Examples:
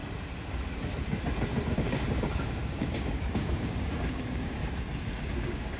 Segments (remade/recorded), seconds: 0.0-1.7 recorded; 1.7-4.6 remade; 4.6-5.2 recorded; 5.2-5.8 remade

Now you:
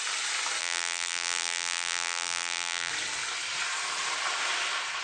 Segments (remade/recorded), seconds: 0.0-0.6 recorded; 0.6-2.9 remade; 2.9-5.0 recorded

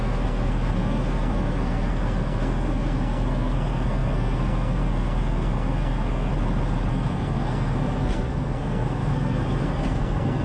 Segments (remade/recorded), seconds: 0.0-6.3 remade; 6.3-6.9 recorded; 6.9-10.4 remade

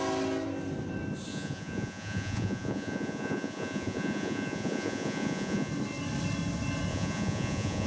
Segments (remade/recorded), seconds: 0.0-1.3 recorded; 1.3-5.7 remade; 5.7-6.9 recorded; 6.9-7.9 remade

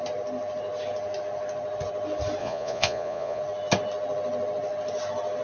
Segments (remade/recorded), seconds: 0.0-2.4 recorded; 2.4-3.4 remade; 3.4-5.4 recorded